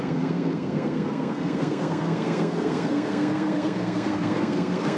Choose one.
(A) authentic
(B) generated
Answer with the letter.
B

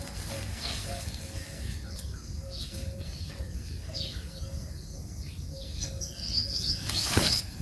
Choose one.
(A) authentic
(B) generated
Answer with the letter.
B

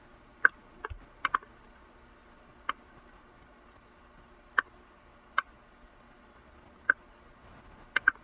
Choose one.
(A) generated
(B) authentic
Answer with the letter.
B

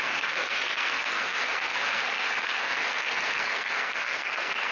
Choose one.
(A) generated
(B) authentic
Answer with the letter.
A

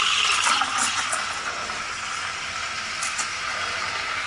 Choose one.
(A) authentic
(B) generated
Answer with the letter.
A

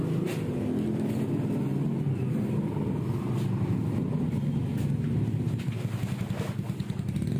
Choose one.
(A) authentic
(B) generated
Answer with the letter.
A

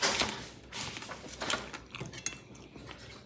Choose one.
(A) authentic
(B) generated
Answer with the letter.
A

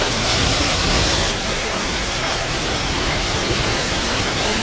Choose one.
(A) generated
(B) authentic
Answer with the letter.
A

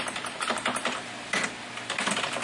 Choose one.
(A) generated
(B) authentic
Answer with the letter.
B